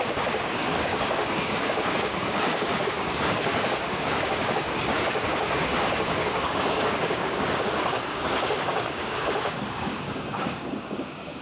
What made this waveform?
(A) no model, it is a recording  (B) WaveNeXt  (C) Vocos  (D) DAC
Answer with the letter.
D